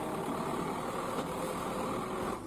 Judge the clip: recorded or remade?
recorded